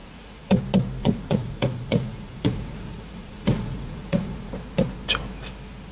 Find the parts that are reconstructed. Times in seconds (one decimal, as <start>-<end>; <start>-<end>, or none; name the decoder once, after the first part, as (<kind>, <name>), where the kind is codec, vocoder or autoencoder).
0.0-0.6 (vocoder, Vocos); 1.0-4.5